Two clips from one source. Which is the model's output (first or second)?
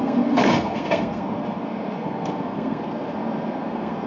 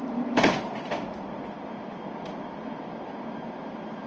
first